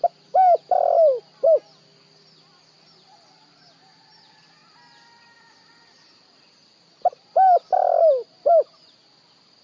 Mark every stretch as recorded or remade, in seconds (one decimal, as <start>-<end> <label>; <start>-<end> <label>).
0.0-9.6 recorded